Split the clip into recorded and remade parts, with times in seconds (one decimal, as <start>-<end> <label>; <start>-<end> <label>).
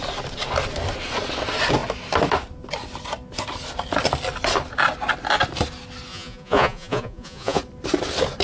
0.0-6.1 recorded; 6.1-7.6 remade; 7.6-8.4 recorded